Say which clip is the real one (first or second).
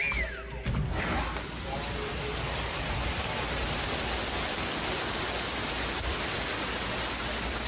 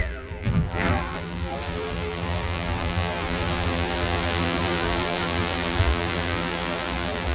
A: first